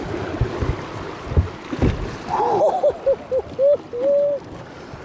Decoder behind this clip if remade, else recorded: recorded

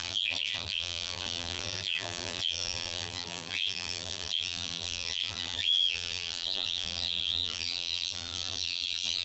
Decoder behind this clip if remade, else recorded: remade, vocoder, BigVGAN v2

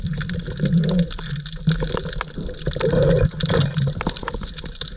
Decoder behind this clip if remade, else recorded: recorded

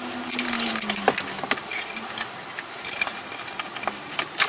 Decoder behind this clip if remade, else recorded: recorded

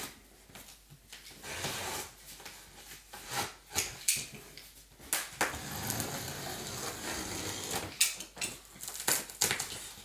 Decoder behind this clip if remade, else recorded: recorded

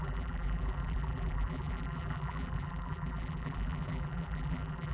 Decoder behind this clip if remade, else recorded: remade, vocoder, BigVGAN v2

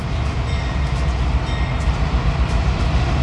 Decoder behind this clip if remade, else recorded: recorded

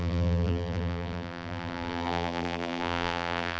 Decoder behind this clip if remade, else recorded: remade, vocoder, BigVGAN v2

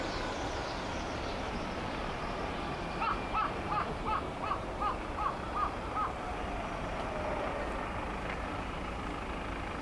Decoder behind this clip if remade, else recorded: recorded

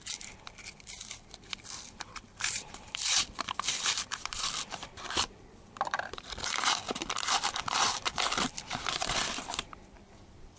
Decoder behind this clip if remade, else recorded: remade, vocoder, BigVGAN v2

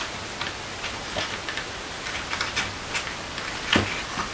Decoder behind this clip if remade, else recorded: recorded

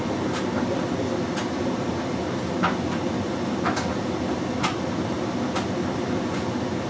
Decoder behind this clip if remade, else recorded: recorded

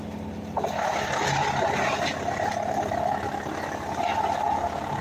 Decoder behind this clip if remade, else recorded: recorded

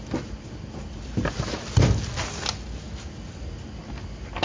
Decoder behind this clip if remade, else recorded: recorded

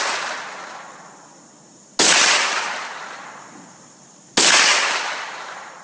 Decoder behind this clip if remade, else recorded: recorded